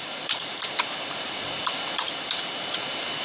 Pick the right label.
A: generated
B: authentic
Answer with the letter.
A